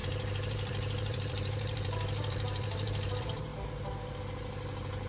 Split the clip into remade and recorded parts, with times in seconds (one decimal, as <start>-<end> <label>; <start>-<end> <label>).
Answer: 0.0-3.1 remade; 3.1-3.5 recorded; 3.5-4.2 remade; 4.2-5.1 recorded